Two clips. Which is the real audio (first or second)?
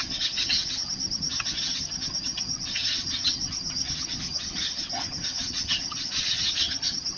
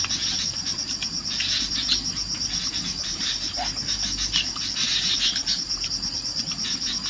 second